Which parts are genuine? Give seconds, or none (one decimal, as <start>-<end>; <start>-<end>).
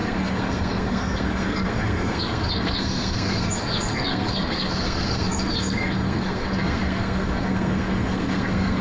none